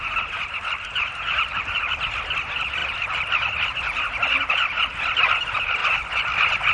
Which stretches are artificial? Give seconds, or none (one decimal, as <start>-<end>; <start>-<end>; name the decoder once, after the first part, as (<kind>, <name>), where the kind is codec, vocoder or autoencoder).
none